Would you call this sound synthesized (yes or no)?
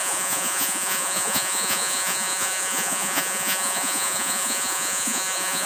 yes